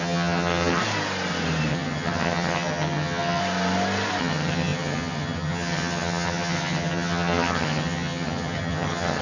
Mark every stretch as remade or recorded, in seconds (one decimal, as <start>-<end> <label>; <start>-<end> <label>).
0.0-0.8 remade; 0.8-1.7 recorded; 1.7-3.4 remade; 3.4-4.2 recorded; 4.2-9.2 remade